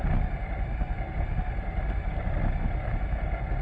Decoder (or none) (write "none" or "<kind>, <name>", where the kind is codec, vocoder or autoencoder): none